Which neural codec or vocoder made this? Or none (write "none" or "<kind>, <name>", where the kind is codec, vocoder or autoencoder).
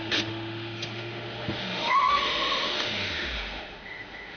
autoencoder, DAC-VAE